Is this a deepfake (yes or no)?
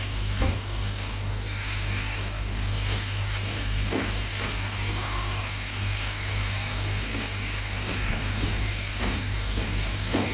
yes